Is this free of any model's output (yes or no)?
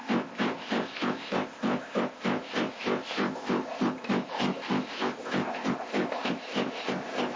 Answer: no